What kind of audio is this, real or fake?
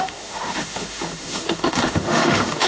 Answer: fake